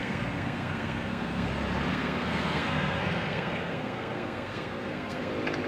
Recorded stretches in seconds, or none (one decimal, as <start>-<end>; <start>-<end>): 1.5-1.9; 5.3-5.7